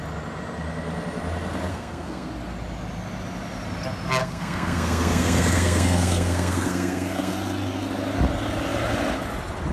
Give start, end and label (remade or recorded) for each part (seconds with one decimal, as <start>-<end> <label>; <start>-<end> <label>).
0.0-1.7 recorded; 1.7-2.3 remade; 2.3-4.2 recorded; 4.2-7.3 remade; 7.3-9.7 recorded